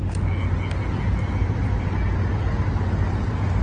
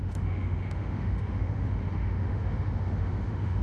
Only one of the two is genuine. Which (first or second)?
first